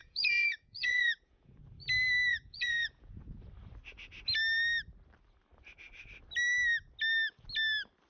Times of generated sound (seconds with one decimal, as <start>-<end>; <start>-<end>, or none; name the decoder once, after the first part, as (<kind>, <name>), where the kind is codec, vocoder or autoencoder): 0.0-1.6 (vocoder, Vocos); 2.3-3.5